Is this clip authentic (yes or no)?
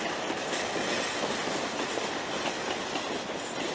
yes